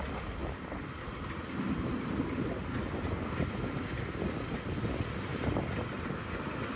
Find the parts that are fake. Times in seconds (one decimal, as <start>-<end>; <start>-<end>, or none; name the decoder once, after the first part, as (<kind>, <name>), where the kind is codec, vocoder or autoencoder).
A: none